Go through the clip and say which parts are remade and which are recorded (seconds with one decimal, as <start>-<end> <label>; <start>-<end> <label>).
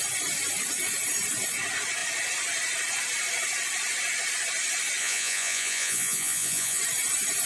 0.0-5.0 recorded; 5.0-6.8 remade; 6.8-7.5 recorded